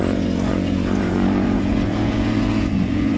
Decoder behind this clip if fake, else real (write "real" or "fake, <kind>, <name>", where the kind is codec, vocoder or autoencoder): fake, vocoder, Vocos